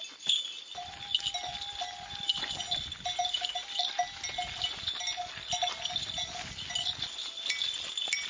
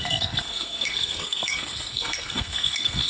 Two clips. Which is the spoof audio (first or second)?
second